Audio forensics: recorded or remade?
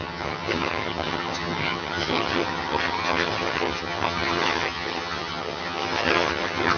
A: remade